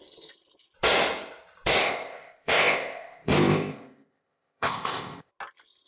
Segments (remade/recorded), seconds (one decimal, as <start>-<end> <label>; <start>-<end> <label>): 0.0-1.8 recorded; 1.8-5.3 remade; 5.3-5.9 recorded